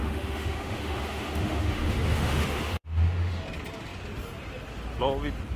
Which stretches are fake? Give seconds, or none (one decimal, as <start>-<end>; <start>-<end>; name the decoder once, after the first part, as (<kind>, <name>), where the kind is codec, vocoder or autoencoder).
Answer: 0.0-3.4 (autoencoder, DAC-VAE)